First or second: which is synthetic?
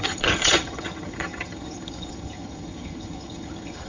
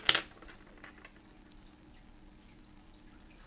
first